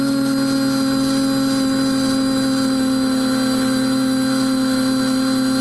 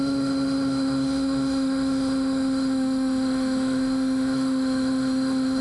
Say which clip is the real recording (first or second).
first